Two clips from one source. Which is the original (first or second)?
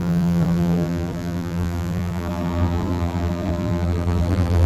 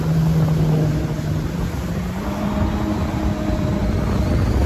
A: second